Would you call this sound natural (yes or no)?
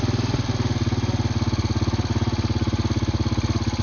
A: yes